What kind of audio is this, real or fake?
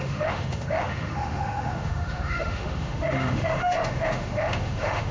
fake